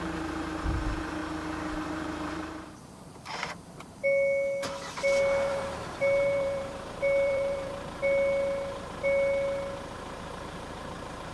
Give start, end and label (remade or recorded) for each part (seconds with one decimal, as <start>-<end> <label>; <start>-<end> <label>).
0.0-1.2 remade; 1.2-1.8 recorded; 1.8-4.0 remade; 4.0-5.5 recorded; 5.5-8.0 remade; 8.0-10.2 recorded; 10.2-11.3 remade